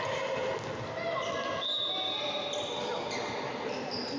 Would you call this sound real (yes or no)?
yes